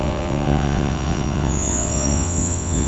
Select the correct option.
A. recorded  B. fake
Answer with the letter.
B